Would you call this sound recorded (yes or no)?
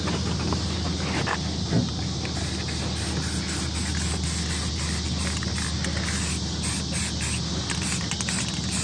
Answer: yes